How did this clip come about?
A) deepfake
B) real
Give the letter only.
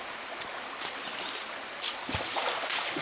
B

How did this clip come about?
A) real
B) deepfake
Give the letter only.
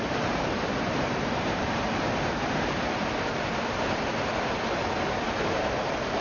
B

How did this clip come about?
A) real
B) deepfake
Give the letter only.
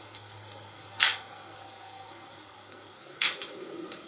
B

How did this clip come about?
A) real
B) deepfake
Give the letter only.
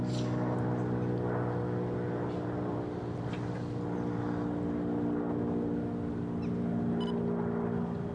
A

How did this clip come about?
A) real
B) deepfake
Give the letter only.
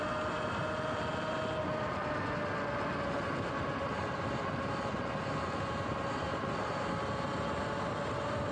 A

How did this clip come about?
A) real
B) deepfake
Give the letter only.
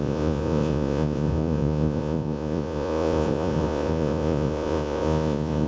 B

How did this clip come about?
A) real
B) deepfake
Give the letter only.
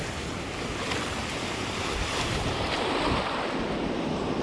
A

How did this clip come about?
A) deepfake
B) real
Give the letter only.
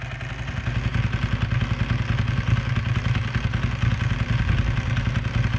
B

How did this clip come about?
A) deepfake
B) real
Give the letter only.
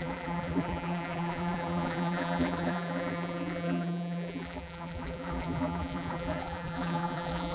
A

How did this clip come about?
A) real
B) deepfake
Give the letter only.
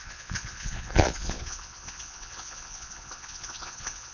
B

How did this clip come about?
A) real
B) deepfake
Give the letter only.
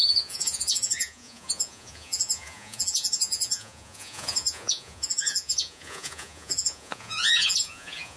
B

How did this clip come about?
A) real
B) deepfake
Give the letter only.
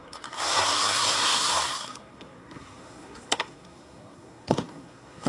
B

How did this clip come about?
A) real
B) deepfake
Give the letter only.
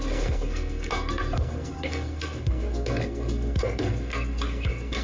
B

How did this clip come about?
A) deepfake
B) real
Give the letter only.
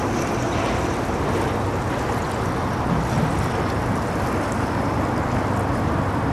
B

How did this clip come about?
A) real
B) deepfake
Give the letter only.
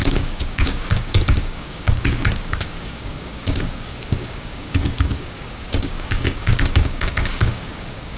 B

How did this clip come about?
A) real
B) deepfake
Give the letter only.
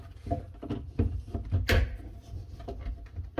A